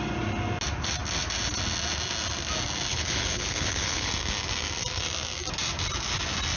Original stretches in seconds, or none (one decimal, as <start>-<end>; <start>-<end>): 0.0-2.9; 4.1-6.6